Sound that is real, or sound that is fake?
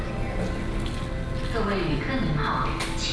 real